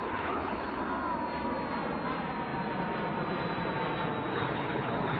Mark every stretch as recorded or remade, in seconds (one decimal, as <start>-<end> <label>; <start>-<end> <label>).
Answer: 0.0-0.8 remade; 0.8-4.3 recorded; 4.3-5.2 remade